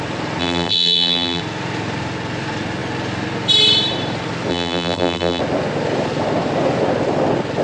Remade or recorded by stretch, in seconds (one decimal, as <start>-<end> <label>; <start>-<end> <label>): 0.0-0.4 recorded; 0.4-1.4 remade; 1.4-4.5 recorded; 4.5-5.4 remade; 5.4-7.6 recorded